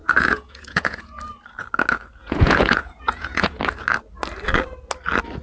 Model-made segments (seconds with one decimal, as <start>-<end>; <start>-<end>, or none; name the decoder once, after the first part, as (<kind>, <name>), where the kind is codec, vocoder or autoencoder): 0.0-1.2 (vocoder, Vocos); 2.2-3.6